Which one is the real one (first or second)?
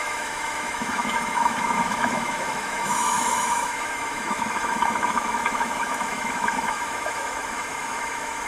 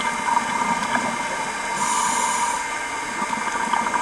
second